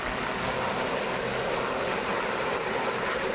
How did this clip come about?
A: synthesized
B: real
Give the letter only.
B